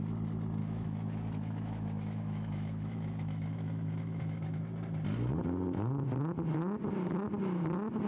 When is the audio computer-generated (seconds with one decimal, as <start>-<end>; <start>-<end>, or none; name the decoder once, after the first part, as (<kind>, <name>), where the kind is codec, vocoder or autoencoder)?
0.6-4.6 (autoencoder, DAC-VAE)